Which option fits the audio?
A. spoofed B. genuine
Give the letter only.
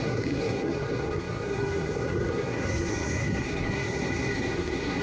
A